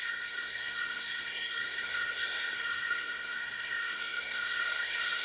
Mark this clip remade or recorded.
remade